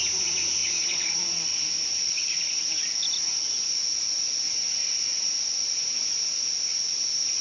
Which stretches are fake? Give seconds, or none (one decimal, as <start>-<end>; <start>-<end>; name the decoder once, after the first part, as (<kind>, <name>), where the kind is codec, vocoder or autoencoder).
none